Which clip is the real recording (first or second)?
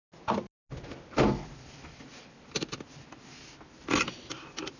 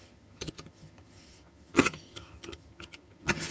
first